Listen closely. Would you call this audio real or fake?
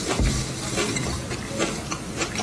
real